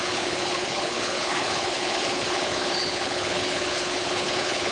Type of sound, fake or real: fake